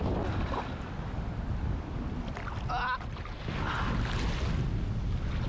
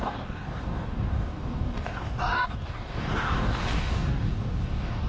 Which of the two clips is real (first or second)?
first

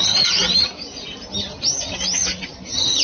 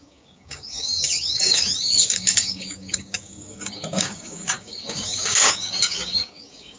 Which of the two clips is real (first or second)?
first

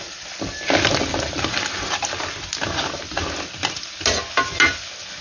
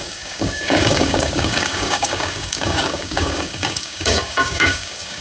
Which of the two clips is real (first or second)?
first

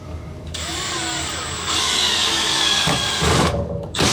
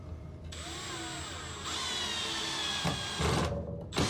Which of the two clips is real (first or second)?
second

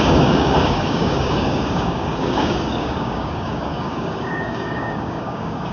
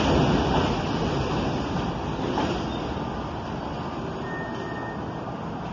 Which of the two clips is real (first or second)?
second